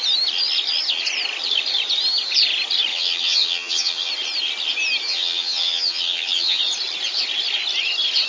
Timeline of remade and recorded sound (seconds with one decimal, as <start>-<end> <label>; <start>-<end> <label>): 0.0-2.9 recorded; 2.9-4.1 remade; 4.1-5.1 recorded; 5.1-6.6 remade; 6.6-8.3 recorded